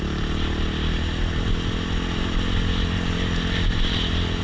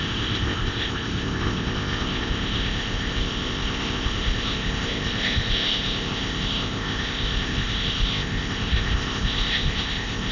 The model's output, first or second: second